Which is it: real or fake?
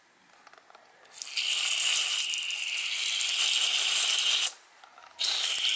real